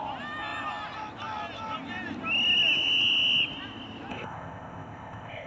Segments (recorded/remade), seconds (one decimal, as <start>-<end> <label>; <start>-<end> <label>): 0.0-4.1 recorded; 4.1-5.5 remade